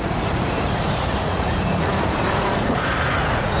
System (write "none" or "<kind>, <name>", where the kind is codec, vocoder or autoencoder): vocoder, Vocos